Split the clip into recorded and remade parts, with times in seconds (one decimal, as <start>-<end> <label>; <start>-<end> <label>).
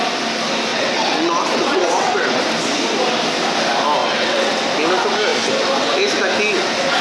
0.0-0.7 recorded; 0.7-2.4 remade; 2.4-4.0 recorded; 4.0-4.6 remade; 4.6-7.0 recorded